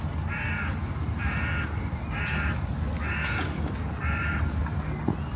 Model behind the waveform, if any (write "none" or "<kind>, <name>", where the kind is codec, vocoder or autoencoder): none